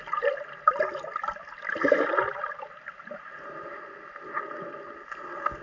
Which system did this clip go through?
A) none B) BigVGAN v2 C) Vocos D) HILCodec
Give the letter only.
A